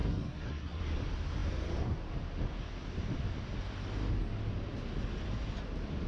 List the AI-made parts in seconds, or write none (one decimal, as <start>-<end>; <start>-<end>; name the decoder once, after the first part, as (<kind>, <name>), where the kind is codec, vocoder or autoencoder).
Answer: 0.0-0.8 (codec, SNAC)